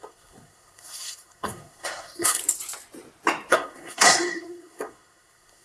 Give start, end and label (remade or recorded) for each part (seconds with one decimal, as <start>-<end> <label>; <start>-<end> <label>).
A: 0.0-2.4 remade; 2.4-3.5 recorded; 3.5-5.6 remade